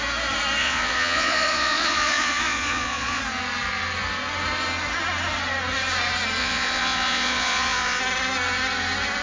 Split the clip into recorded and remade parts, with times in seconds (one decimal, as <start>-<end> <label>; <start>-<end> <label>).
0.0-0.6 recorded; 0.6-3.2 remade; 3.2-6.4 recorded; 6.4-8.0 remade; 8.0-9.2 recorded